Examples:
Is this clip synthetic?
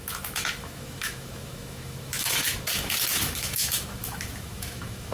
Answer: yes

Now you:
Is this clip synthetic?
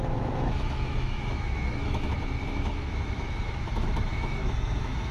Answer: yes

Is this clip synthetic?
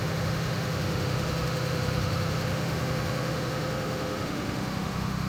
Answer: yes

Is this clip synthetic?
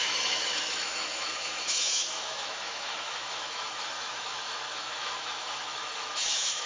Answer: yes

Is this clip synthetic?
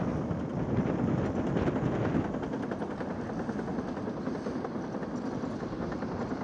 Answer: no